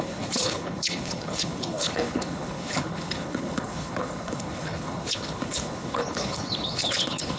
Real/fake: fake